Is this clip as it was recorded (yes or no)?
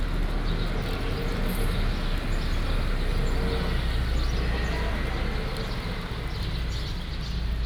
yes